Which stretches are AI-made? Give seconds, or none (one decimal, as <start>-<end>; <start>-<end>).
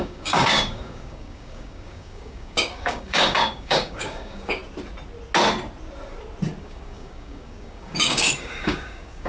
0.0-4.6; 6.6-9.3